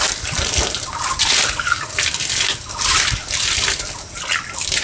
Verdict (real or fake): real